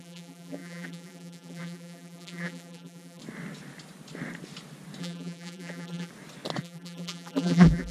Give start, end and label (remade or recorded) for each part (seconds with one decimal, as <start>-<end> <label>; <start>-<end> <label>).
0.0-3.2 remade; 3.2-5.0 recorded; 5.0-6.1 remade; 6.1-6.6 recorded; 6.6-7.9 remade